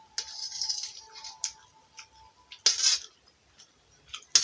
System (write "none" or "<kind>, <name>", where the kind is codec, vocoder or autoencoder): none